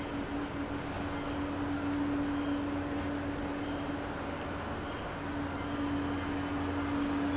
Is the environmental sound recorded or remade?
recorded